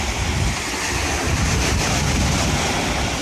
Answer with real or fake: real